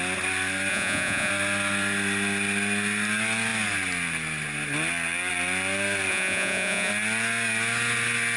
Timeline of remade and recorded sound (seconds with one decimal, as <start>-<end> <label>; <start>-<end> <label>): 0.0-0.7 recorded; 0.7-1.3 remade; 1.3-6.1 recorded; 6.1-6.9 remade; 6.9-8.4 recorded